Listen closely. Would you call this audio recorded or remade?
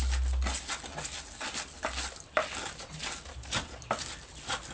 recorded